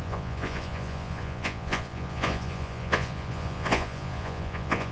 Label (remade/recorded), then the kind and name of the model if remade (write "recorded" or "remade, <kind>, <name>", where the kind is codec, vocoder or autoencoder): remade, vocoder, Vocos